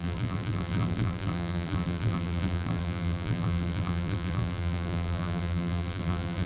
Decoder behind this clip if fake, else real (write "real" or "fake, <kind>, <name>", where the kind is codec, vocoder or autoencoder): fake, vocoder, BigVGAN v2